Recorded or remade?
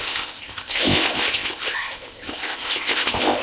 remade